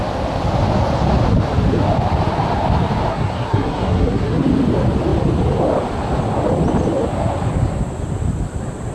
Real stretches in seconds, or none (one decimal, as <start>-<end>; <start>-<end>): 0.0-3.1; 4.5-8.9